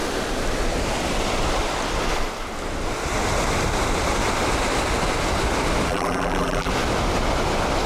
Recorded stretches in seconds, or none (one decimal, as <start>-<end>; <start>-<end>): 0.0-5.9; 6.7-7.9

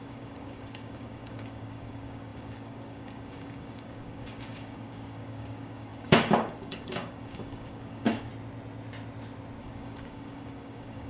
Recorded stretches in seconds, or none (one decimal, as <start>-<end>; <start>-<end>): 8.3-9.6

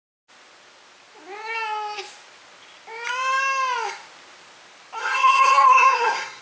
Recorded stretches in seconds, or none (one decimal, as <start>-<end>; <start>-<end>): 0.0-5.0